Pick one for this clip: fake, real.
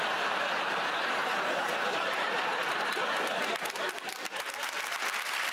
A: real